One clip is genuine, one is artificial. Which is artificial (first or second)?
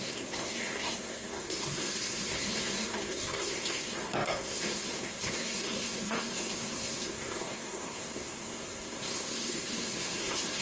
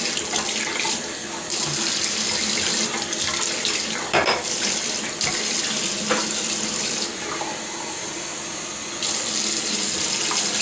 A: first